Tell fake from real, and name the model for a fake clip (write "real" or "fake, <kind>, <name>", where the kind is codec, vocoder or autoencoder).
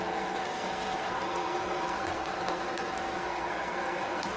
fake, codec, SNAC